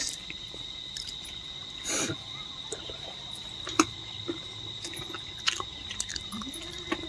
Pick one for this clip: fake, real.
fake